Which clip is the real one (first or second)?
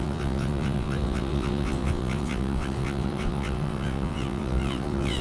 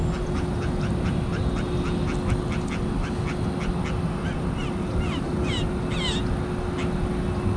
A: second